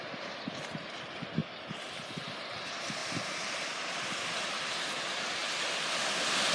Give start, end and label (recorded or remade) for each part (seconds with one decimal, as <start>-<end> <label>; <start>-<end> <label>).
0.0-1.4 recorded; 1.4-2.2 remade; 2.2-3.0 recorded; 3.0-4.5 remade; 4.5-5.4 recorded; 5.4-6.5 remade